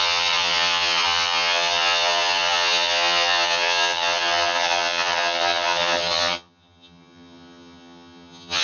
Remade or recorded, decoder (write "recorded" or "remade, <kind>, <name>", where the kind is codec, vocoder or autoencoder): remade, vocoder, HiFi-GAN